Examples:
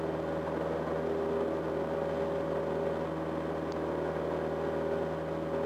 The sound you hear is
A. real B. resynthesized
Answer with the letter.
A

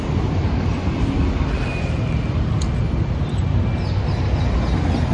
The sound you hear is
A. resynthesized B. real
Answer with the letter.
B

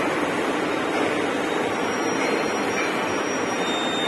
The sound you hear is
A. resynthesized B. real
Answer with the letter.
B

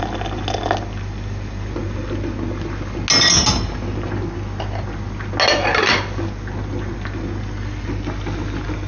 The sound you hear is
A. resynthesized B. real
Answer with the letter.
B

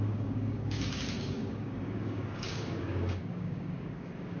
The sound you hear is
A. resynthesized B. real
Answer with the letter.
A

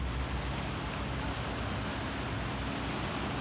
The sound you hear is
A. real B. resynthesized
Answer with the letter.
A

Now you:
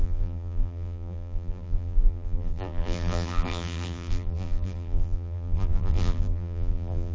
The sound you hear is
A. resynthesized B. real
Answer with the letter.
A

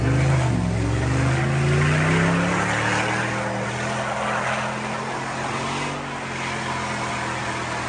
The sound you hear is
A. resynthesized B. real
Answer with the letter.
B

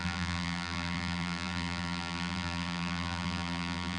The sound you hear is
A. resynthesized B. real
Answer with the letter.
A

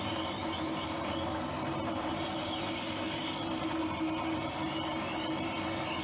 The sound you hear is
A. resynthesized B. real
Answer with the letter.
B